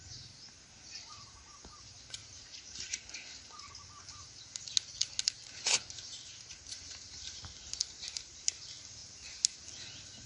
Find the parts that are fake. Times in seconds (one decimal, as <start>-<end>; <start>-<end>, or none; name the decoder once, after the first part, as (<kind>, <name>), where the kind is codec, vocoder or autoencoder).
2.2-3.7 (vocoder, BigVGAN v2); 5.4-8.6